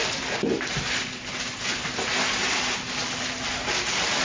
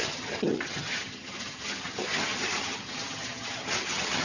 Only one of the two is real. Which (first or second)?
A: first